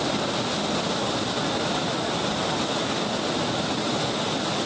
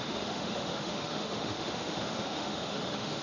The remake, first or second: second